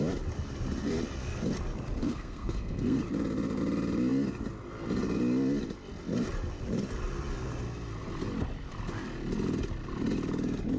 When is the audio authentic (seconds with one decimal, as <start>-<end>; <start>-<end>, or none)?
0.0-2.0; 3.0-10.8

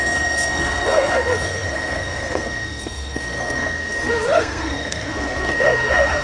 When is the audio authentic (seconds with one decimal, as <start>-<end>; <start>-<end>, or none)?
none

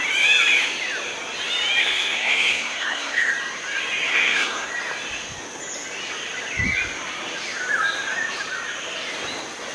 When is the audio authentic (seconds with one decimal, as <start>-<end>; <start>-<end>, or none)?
0.0-1.8; 3.3-4.1; 4.7-9.7

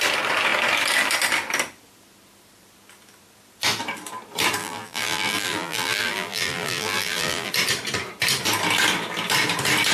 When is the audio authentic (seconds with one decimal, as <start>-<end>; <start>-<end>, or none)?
0.0-4.6; 7.5-9.9

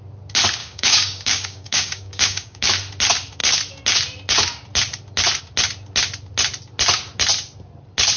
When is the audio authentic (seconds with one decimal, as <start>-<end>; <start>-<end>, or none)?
0.0-0.6; 2.7-8.2

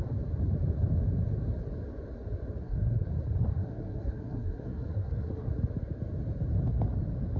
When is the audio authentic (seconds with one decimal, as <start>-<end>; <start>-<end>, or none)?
0.0-2.6; 3.1-3.5; 5.5-7.4